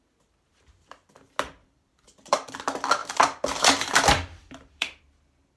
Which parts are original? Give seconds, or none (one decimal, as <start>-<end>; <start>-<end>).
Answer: 0.0-1.6; 2.5-3.0; 5.0-5.6